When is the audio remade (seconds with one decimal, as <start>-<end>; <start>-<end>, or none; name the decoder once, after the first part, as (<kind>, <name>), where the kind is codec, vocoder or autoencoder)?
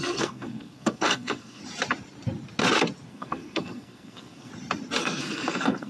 0.0-1.6 (codec, SNAC); 3.1-4.5; 5.0-5.9